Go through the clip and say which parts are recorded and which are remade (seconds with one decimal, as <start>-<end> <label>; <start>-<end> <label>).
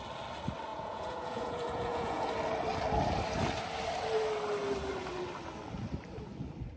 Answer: 0.0-0.7 recorded; 0.7-2.3 remade; 2.3-6.8 recorded